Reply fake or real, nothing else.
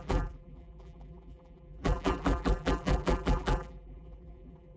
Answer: fake